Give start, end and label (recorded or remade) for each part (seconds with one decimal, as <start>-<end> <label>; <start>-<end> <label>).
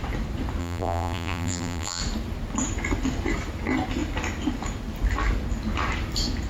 0.0-0.6 recorded; 0.6-2.0 remade; 2.0-6.5 recorded